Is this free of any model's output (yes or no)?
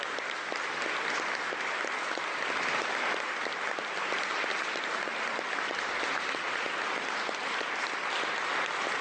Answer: yes